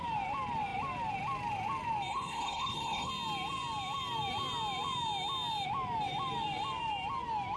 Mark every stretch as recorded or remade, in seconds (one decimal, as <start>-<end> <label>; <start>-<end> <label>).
0.0-2.1 recorded; 2.1-3.1 remade; 3.1-7.6 recorded

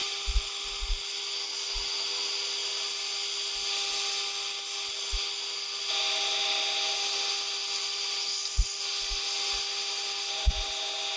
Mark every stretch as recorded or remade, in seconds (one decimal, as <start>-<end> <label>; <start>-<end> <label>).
0.0-11.2 recorded

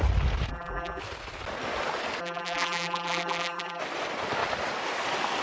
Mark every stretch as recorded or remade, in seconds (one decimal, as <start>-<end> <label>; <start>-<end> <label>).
0.0-0.5 recorded; 0.5-1.0 remade; 1.0-2.2 recorded; 2.2-3.8 remade; 3.8-5.4 recorded

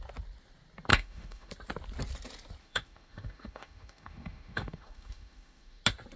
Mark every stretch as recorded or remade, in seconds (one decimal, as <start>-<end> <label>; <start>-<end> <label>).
0.0-0.9 recorded; 0.9-1.5 remade; 1.5-2.6 recorded; 2.6-5.8 remade; 5.8-6.2 recorded

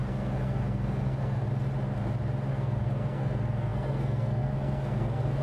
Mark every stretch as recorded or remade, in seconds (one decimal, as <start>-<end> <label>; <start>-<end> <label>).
0.0-1.4 remade; 1.4-2.5 recorded; 2.5-5.4 remade

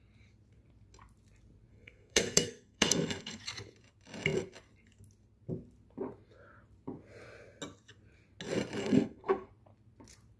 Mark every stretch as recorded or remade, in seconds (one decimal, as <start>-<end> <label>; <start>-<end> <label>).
0.0-1.7 recorded; 1.7-3.4 remade; 3.4-8.8 recorded; 8.8-9.5 remade; 9.5-10.4 recorded

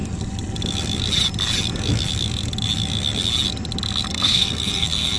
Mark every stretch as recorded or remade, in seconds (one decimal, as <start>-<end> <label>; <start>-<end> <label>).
0.0-4.1 recorded; 4.1-5.2 remade

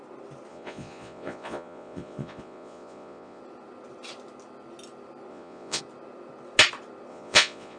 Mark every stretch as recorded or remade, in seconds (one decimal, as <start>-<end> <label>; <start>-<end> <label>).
0.0-0.5 recorded; 0.5-3.4 remade; 3.4-5.3 recorded; 5.3-5.8 remade; 5.8-7.1 recorded; 7.1-7.8 remade